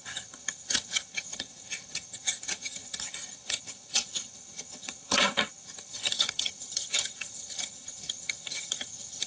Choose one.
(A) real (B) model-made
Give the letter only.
B